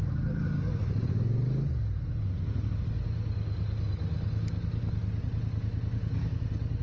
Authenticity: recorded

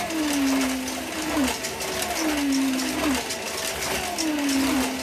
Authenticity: recorded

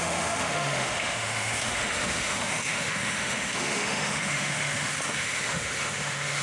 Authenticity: remade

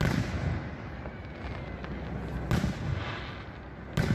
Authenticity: recorded